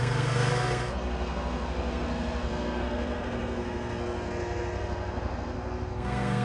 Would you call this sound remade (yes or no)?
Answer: yes